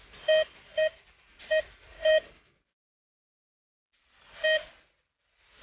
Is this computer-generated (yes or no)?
no